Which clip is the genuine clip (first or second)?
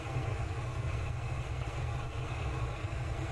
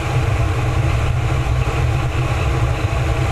second